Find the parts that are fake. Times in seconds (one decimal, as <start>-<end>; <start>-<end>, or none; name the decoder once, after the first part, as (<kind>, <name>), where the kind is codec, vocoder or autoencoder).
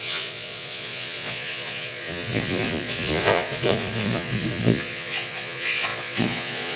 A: 0.0-6.8 (vocoder, Vocos)